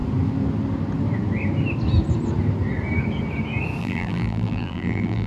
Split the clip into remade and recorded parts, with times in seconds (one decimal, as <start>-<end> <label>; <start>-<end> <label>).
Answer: 0.0-3.8 recorded; 3.8-5.3 remade